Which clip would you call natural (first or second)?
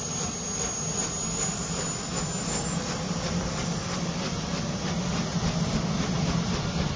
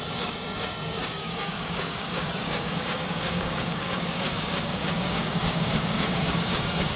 first